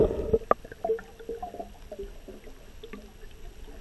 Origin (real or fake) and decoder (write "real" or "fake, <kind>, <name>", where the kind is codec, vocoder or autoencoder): real